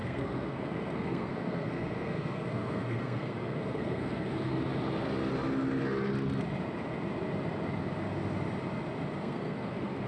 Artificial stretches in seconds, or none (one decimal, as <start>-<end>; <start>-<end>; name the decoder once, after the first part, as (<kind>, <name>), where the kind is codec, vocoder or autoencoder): 0.0-4.5 (codec, SNAC); 9.2-10.1